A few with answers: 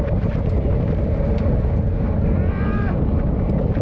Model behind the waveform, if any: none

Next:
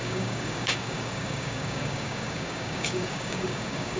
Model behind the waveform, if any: codec, DAC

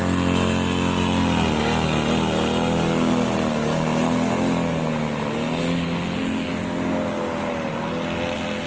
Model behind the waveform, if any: none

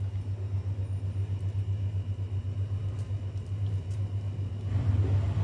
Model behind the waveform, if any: none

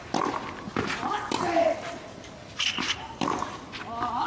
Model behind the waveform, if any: none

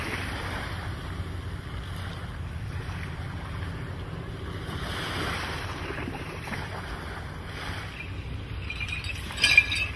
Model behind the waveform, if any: none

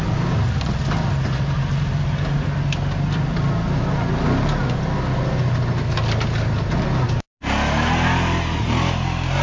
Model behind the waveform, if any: none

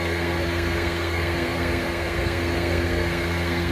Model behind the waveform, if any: codec, SNAC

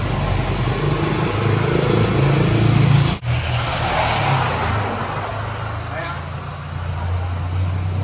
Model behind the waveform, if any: none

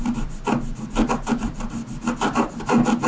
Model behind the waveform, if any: none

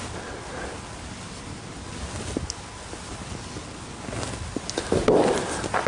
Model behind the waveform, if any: none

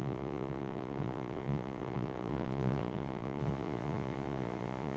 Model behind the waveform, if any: vocoder, Vocos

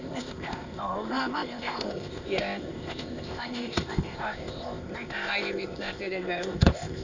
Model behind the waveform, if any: codec, ZipCodec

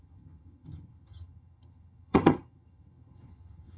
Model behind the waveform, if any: vocoder, HiFi-GAN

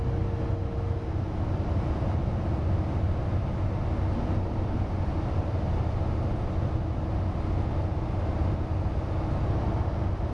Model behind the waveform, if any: none